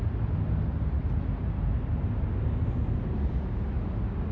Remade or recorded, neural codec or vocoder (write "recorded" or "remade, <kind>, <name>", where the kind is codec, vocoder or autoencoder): recorded